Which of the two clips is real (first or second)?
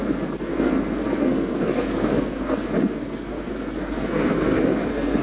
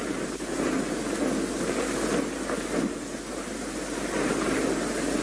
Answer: second